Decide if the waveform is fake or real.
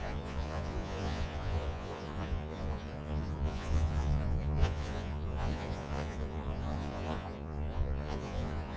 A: fake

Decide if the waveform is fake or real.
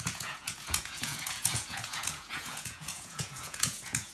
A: fake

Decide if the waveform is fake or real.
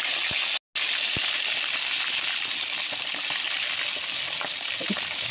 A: real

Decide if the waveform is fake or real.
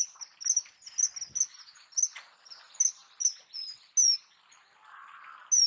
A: real